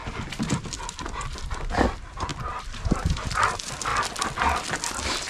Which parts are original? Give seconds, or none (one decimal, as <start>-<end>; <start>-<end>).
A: 0.0-2.3; 3.4-5.3